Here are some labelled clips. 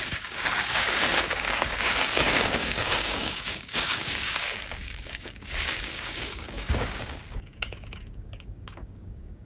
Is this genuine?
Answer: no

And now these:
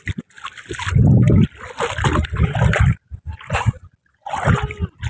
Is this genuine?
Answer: yes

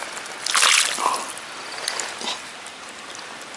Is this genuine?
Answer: yes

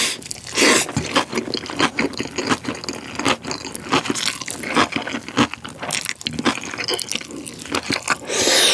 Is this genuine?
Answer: yes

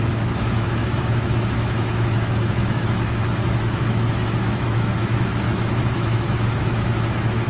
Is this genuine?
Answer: no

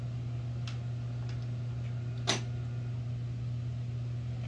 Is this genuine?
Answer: yes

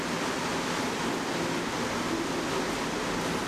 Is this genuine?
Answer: yes